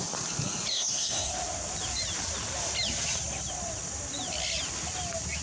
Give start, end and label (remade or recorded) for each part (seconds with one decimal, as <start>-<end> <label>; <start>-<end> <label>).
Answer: 0.0-0.7 recorded; 0.7-1.3 remade; 1.3-5.4 recorded